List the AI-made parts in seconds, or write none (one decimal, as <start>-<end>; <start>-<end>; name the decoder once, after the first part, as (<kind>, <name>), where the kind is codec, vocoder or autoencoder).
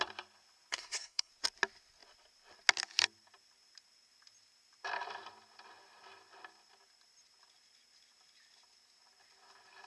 0.7-1.3 (codec, SNAC)